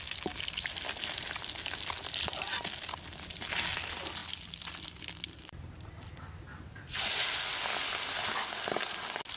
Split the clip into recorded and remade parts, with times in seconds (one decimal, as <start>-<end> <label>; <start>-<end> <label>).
0.0-9.4 recorded